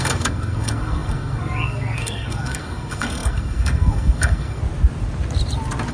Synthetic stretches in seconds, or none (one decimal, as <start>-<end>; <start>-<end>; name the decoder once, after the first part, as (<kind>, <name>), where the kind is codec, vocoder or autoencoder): 0.0-4.6 (codec, SNAC)